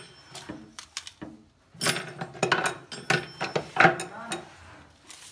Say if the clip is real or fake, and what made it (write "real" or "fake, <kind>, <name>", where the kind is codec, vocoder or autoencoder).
real